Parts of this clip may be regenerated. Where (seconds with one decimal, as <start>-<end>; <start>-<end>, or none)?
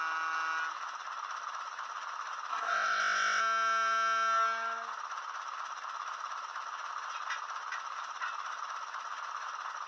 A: 2.5-3.4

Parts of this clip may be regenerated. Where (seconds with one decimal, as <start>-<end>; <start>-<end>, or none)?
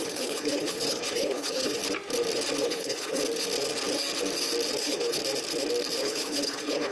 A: 0.0-1.8; 2.6-3.2; 4.8-5.2; 6.0-6.9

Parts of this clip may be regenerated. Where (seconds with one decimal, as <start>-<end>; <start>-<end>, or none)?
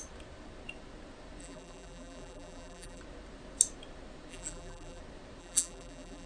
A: 1.4-3.0; 4.3-5.0; 5.4-6.3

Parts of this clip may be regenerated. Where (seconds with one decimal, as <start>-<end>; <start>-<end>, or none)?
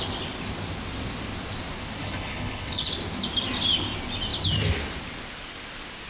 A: 2.0-2.9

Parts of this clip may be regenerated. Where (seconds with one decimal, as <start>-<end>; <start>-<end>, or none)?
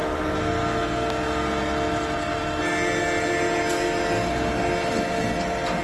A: none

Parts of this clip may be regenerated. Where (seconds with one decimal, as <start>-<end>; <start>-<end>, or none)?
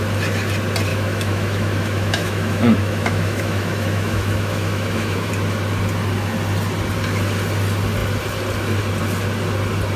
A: 0.9-5.3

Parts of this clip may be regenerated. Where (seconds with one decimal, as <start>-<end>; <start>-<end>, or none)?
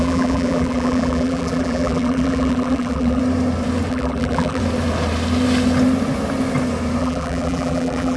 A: 0.0-3.2; 3.9-4.6; 7.0-8.2